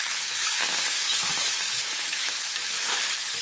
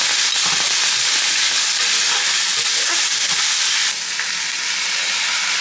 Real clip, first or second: second